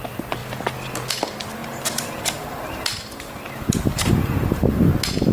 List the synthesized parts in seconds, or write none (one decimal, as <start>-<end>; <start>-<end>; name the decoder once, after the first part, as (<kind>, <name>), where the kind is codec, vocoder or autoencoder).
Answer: 1.6-4.8 (vocoder, BigVGAN v2)